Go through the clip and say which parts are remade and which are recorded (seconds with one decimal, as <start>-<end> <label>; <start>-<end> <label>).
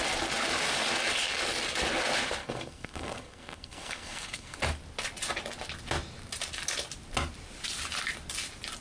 0.0-2.4 recorded; 2.4-4.6 remade; 4.6-8.8 recorded